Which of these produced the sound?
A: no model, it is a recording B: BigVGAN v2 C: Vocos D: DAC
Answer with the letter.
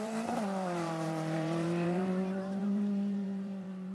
B